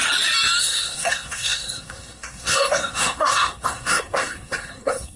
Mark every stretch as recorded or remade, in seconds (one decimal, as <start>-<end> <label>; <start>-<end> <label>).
0.0-0.6 recorded; 0.6-5.2 remade